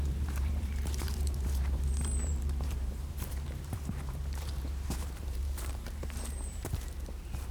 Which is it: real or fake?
fake